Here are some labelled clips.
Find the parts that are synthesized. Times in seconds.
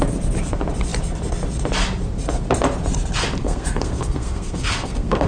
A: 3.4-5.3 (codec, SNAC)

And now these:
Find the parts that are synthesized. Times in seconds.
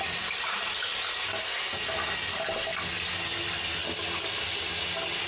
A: none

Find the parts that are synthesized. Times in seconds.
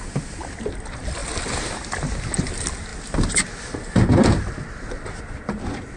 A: none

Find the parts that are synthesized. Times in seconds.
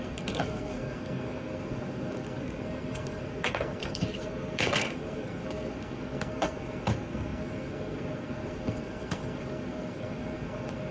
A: 0.0-10.9 (codec, SNAC)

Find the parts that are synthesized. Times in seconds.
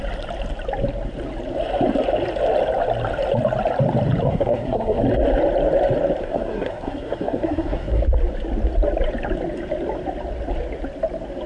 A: 4.3-5.0 (codec, SNAC); 6.2-8.0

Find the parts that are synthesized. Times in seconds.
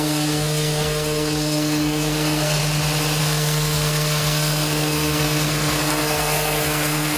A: 0.0-2.6 (codec, SNAC); 3.2-7.2